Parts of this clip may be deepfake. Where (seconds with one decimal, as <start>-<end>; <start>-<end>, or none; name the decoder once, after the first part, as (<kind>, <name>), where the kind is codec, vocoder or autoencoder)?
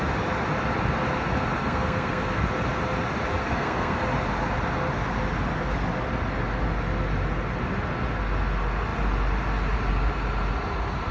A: 1.6-2.4 (codec, SNAC); 3.4-4.0